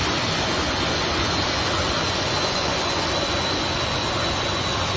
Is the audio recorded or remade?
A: remade